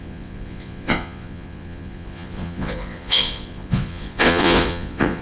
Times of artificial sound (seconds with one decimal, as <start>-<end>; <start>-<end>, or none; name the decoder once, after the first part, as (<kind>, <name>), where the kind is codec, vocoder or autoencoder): 0.0-5.2 (vocoder, Vocos)